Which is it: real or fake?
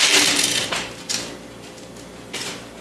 real